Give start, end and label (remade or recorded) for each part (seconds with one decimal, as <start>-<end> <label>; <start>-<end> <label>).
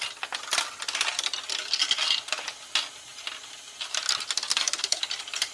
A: 0.0-4.5 recorded; 4.5-5.0 remade; 5.0-5.5 recorded